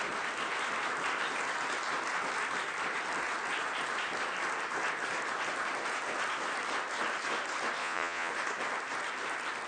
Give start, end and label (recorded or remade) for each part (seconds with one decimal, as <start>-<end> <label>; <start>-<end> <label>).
0.0-7.8 recorded; 7.8-8.3 remade; 8.3-9.7 recorded